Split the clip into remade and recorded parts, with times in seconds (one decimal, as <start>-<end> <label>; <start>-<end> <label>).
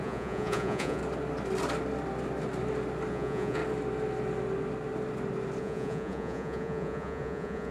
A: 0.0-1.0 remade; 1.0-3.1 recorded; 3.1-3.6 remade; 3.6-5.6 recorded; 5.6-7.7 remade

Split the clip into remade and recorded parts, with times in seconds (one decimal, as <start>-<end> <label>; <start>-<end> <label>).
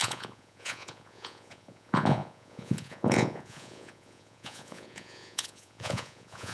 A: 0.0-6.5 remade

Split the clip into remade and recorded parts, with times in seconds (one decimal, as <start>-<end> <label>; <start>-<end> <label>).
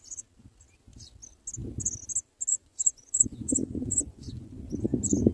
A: 0.0-2.5 recorded; 2.5-4.5 remade; 4.5-5.3 recorded